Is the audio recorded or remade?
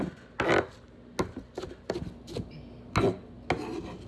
recorded